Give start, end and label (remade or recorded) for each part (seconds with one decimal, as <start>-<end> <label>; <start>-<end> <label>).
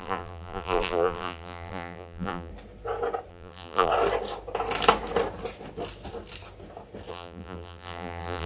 0.0-2.5 remade; 2.5-3.3 recorded; 3.3-3.9 remade; 3.9-7.1 recorded; 7.1-8.5 remade